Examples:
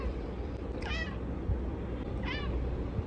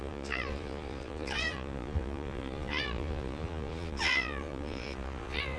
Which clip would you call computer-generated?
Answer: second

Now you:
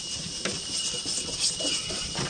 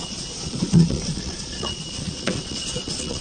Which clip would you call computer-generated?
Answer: second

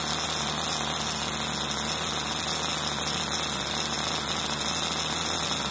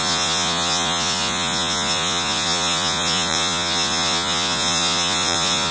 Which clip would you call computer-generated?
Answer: second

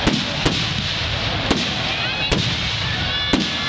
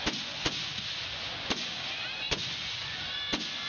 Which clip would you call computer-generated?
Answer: second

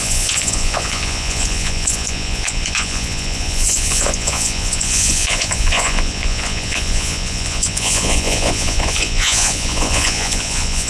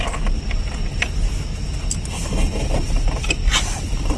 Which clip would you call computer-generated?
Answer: first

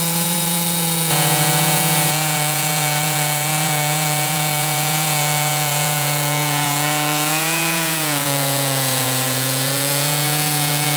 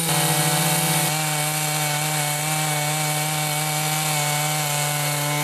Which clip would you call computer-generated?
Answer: first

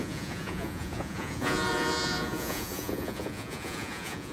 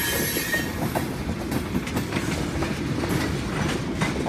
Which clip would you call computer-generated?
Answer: first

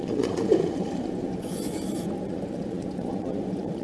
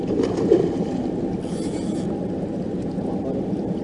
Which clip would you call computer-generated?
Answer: first